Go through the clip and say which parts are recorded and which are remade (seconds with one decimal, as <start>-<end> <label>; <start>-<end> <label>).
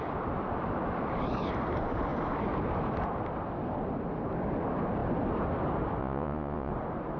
0.0-6.0 recorded; 6.0-6.7 remade; 6.7-7.2 recorded